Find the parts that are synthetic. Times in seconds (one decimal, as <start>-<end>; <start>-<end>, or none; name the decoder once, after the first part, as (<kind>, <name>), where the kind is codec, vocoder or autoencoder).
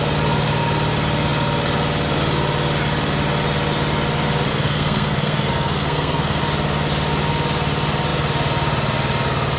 4.5-6.4 (codec, SNAC)